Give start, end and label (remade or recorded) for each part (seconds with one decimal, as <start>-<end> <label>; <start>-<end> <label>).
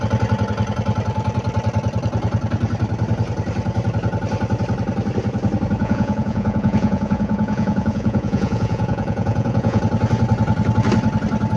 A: 0.0-5.8 recorded; 5.8-9.8 remade; 9.8-11.6 recorded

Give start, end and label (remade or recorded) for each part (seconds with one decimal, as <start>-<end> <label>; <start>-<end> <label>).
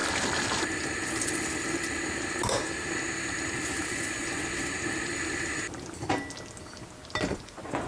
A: 0.0-3.9 recorded; 3.9-4.4 remade; 4.4-7.2 recorded; 7.2-7.9 remade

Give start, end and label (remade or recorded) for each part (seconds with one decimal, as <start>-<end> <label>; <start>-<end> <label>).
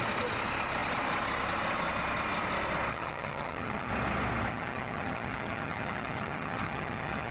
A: 0.0-2.9 recorded; 2.9-3.9 remade; 3.9-4.5 recorded; 4.5-7.3 remade